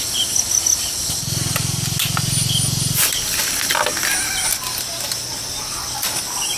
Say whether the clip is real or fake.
real